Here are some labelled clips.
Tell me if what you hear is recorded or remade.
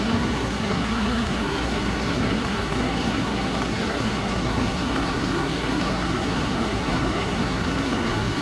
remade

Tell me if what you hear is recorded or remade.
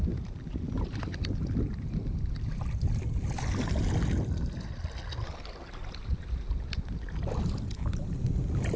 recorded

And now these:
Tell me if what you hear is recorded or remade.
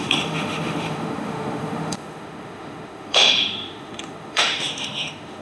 remade